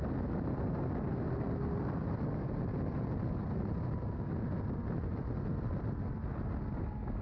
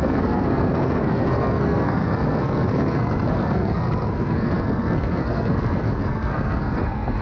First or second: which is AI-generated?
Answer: second